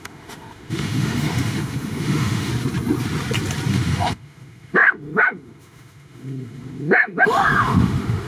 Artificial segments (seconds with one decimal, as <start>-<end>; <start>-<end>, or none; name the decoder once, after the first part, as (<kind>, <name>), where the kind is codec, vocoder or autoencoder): 0.0-2.5 (autoencoder, DAC-VAE); 3.7-8.3